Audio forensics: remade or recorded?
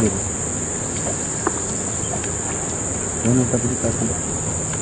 recorded